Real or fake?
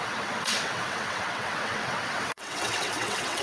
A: fake